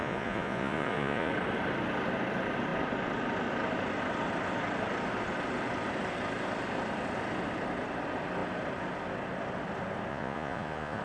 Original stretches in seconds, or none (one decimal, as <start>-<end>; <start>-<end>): 1.3-10.1